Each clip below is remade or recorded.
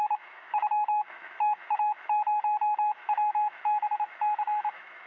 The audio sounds remade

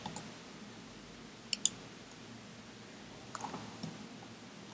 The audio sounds recorded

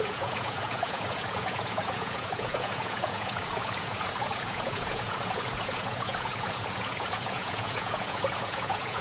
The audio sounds remade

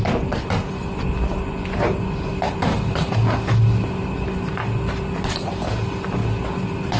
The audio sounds recorded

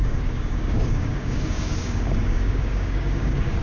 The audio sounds remade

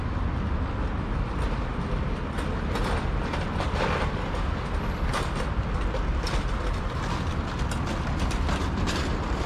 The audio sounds recorded